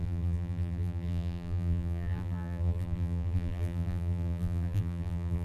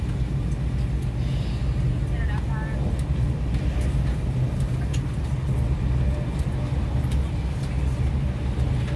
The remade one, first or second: first